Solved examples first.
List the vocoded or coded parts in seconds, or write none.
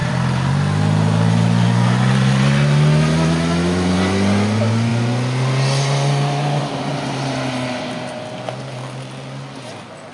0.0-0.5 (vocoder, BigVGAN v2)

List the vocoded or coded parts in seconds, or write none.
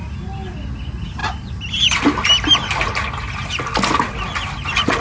none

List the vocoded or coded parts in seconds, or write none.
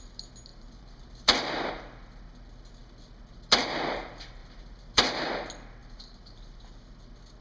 0.5-1.7 (vocoder, BigVGAN v2); 4.4-5.3; 5.8-7.0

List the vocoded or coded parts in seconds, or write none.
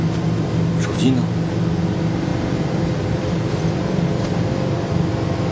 2.3-5.1 (vocoder, BigVGAN v2)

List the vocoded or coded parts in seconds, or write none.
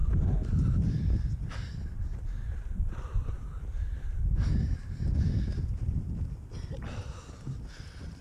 0.0-1.4 (vocoder, BigVGAN v2)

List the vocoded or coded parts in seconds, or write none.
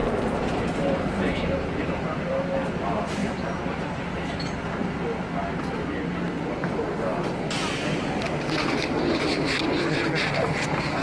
0.0-2.3 (vocoder, BigVGAN v2); 3.2-4.0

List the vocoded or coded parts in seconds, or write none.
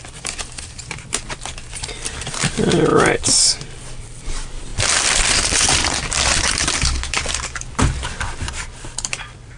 0.0-2.9 (vocoder, BigVGAN v2); 3.6-4.7; 6.4-9.6